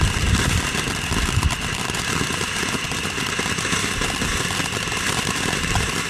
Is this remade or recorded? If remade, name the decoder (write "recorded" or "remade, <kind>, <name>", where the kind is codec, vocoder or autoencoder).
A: recorded